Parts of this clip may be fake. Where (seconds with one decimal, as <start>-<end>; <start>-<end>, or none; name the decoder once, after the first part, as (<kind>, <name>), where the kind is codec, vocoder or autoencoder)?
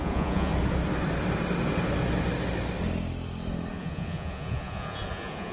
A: 0.0-0.5 (vocoder, Vocos); 3.7-5.5